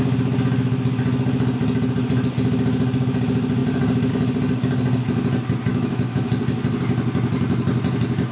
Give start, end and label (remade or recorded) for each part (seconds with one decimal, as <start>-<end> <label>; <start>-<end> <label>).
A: 0.0-5.7 recorded; 5.7-6.3 remade; 6.3-8.3 recorded